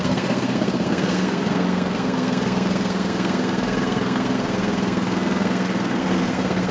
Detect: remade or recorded remade